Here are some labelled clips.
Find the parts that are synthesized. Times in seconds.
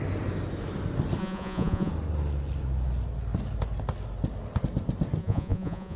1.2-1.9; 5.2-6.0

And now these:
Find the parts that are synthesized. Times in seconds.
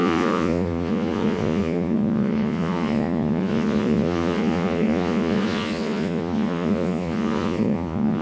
0.0-8.2